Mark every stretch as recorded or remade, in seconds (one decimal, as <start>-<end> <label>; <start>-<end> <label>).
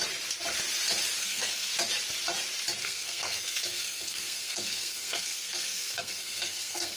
0.0-1.2 recorded; 1.2-1.7 remade; 1.7-2.8 recorded; 2.8-7.0 remade